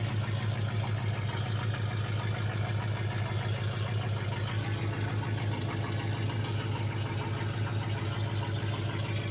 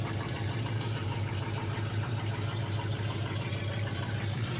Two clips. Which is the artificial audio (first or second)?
second